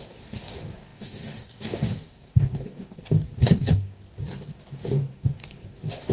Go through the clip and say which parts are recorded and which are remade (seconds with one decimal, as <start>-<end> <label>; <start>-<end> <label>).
0.0-4.0 remade; 4.0-4.7 recorded; 4.7-6.1 remade